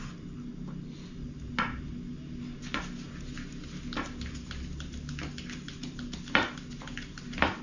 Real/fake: real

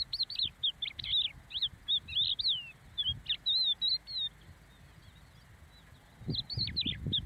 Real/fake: real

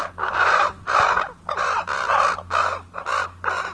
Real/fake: real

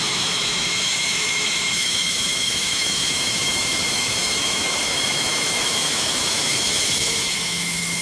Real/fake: fake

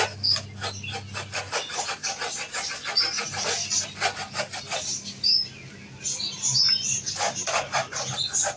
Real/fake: real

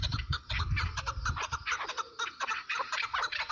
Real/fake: fake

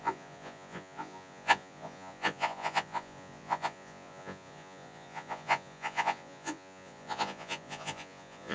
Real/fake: fake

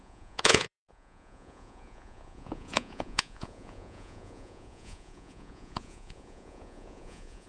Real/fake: fake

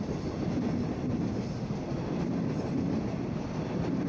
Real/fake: real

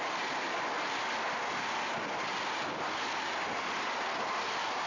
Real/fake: real